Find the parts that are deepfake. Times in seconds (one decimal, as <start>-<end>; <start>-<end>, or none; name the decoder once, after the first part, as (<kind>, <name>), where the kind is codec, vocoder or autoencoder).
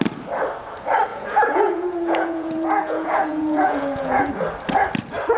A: 1.1-4.3 (vocoder, Vocos)